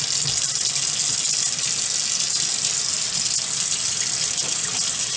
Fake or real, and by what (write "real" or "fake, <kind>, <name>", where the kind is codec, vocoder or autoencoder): real